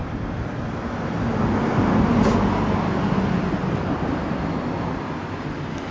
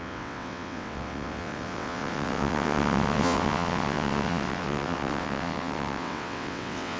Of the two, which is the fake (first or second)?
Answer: second